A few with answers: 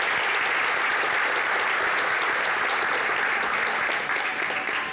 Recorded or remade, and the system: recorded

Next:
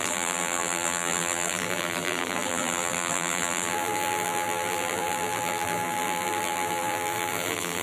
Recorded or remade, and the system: remade, vocoder, BigVGAN v2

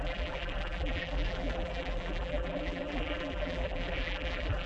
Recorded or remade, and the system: remade, vocoder, BigVGAN v2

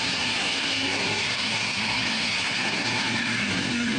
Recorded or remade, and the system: remade, codec, SNAC